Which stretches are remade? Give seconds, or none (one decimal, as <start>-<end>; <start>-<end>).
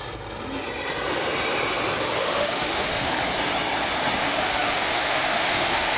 2.2-3.2; 4.2-6.0